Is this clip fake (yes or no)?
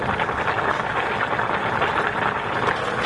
no